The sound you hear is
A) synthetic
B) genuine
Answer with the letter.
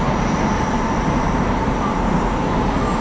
B